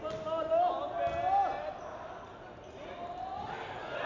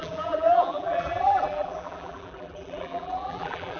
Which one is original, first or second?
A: first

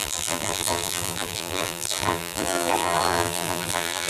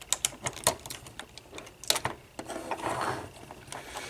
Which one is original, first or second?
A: second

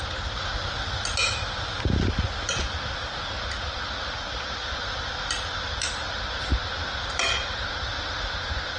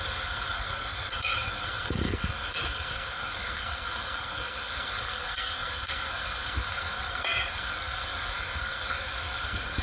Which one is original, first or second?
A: first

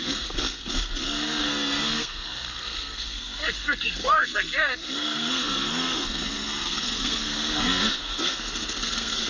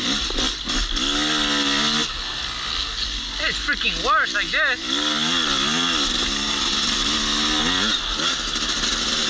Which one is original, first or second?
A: second